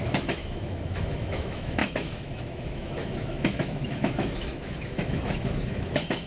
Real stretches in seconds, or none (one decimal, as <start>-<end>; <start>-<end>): none